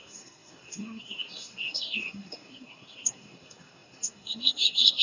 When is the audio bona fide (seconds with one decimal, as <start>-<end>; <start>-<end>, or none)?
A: none